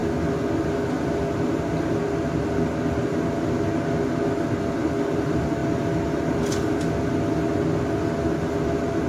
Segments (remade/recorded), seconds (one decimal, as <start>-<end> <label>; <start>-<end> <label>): 0.0-9.1 recorded